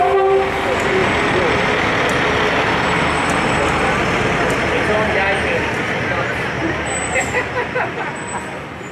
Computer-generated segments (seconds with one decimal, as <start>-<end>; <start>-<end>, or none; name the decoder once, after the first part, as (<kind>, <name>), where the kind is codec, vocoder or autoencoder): none